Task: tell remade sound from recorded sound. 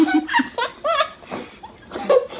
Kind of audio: recorded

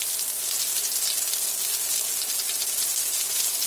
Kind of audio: recorded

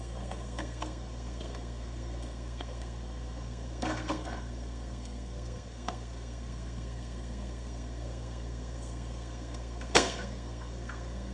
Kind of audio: remade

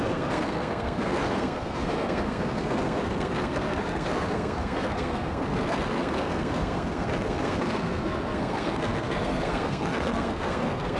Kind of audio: remade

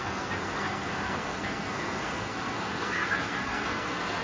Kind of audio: remade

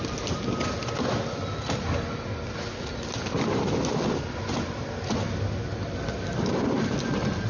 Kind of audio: recorded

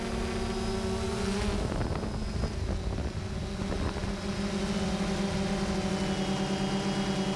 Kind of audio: recorded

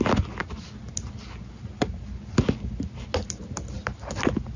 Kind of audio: recorded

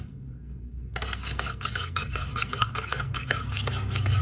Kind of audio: remade